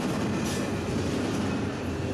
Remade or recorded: recorded